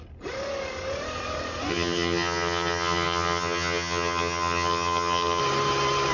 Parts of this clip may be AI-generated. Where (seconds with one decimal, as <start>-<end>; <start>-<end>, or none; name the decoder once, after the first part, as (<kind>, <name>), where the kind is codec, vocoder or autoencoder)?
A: 1.7-5.4 (vocoder, HiFi-GAN)